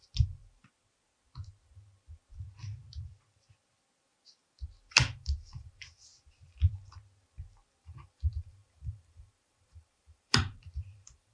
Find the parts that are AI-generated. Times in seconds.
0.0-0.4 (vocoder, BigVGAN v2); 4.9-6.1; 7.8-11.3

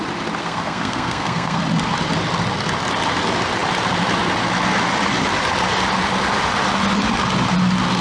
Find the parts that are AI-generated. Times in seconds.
0.4-1.6 (codec, SNAC)

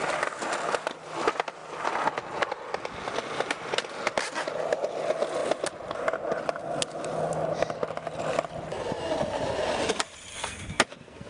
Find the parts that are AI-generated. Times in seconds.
10.3-11.3 (codec, SNAC)

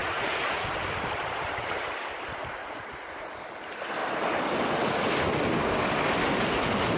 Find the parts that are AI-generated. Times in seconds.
0.0-0.7 (vocoder, Vocos); 2.6-3.3

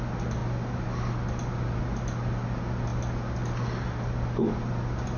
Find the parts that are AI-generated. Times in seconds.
none

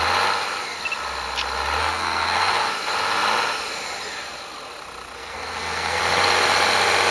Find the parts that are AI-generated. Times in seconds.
1.8-2.7 (codec, SNAC); 5.2-6.0

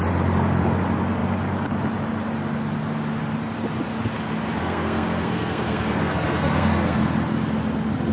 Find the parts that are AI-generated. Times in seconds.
4.6-7.0 (codec, SNAC)

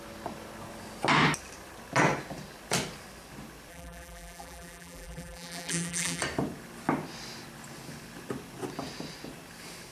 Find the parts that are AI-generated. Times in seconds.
3.7-6.2 (vocoder, BigVGAN v2)